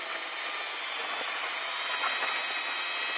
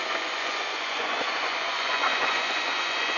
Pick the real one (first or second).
first